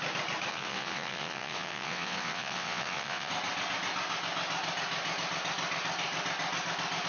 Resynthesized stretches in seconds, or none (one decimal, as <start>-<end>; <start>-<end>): 0.5-3.3